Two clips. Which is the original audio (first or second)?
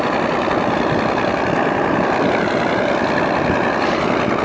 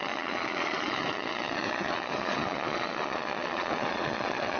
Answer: first